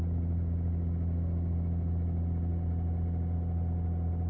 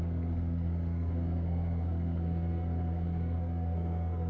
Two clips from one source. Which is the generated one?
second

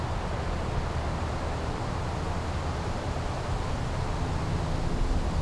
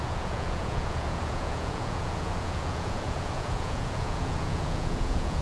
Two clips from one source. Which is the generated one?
second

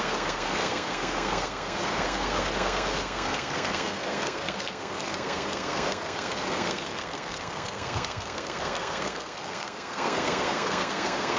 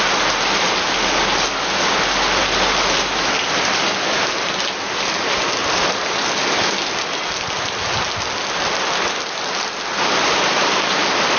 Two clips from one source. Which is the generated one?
first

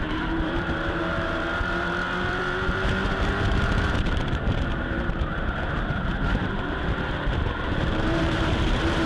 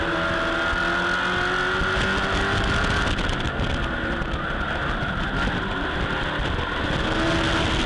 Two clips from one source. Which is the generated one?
first